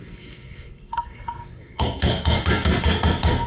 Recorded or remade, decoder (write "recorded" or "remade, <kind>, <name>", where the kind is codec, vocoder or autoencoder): remade, codec, SNAC